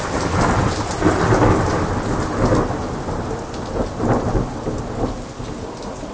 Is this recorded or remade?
recorded